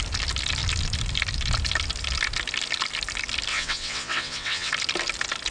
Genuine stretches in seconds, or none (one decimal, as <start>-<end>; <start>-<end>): 0.0-3.5; 4.7-5.5